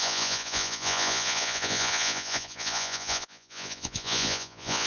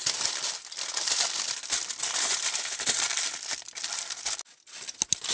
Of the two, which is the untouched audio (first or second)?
second